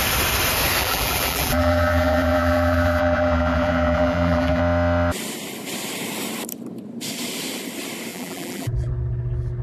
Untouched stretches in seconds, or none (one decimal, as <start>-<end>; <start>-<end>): 0.0-0.8; 4.6-8.1; 8.9-9.6